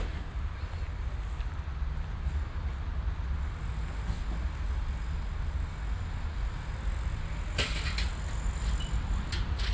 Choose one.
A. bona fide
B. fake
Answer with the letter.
A